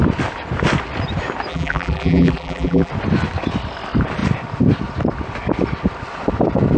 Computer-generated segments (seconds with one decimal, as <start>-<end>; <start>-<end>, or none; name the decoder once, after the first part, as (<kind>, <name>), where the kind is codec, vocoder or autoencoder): 1.5-2.9 (vocoder, BigVGAN v2)